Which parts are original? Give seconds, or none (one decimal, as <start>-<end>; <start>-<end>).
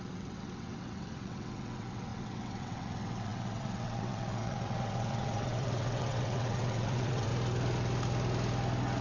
7.3-9.0